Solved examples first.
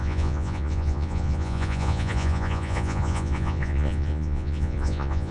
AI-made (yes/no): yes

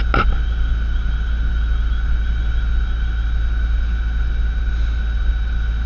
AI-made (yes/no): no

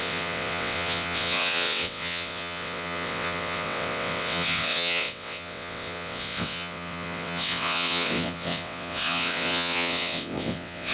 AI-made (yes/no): yes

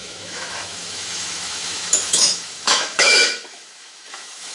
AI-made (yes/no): yes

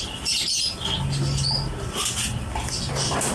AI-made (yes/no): no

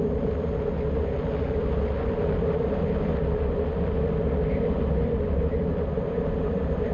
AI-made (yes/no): no